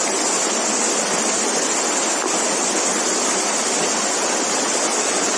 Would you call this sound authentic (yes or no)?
yes